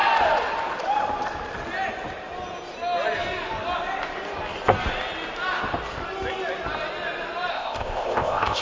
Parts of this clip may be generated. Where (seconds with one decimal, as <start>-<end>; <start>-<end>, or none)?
7.5-8.6

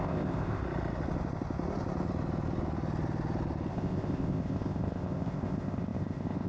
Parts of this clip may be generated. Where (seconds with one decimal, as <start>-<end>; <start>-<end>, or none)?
0.0-0.6; 3.7-6.5

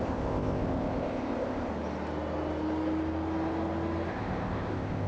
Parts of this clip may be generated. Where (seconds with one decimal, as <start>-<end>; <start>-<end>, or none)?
0.0-1.7; 4.1-5.1

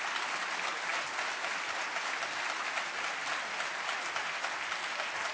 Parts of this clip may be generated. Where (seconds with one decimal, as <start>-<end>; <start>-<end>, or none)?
none

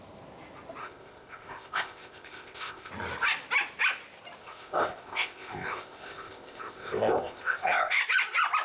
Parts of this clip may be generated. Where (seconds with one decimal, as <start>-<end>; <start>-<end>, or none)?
0.8-2.9; 4.4-8.0

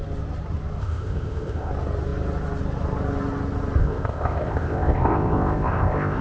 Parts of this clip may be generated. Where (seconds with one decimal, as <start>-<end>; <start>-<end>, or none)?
0.8-1.7; 3.8-6.2

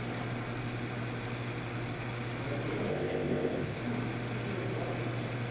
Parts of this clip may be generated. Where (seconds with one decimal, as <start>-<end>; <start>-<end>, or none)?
2.9-3.8